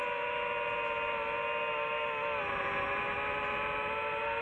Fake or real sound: real